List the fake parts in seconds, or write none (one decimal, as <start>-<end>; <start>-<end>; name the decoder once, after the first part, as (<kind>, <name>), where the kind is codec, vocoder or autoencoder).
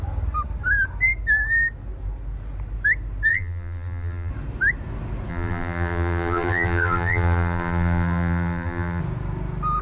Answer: 3.3-4.3 (vocoder, BigVGAN v2); 5.3-9.0